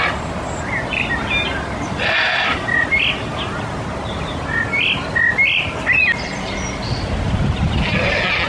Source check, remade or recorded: recorded